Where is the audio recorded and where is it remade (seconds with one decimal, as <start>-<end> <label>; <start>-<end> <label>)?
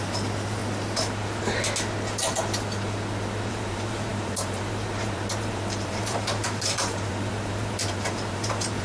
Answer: 0.0-0.6 remade; 0.6-3.5 recorded; 3.5-8.8 remade